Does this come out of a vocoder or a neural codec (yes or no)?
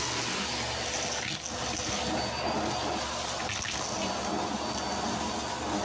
no